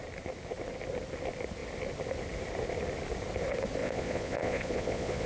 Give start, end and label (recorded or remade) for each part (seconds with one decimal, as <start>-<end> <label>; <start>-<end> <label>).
0.0-3.8 recorded; 3.8-5.3 remade